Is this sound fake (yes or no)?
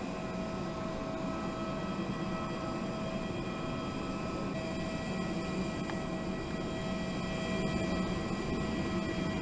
no